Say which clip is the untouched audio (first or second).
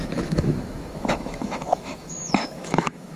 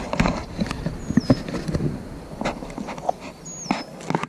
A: second